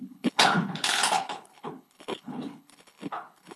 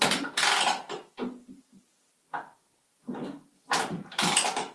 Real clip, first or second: second